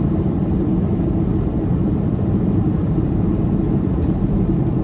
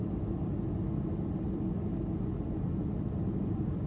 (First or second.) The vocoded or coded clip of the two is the first